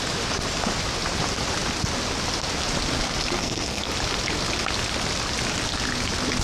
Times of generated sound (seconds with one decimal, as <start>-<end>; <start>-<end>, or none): 3.4-3.9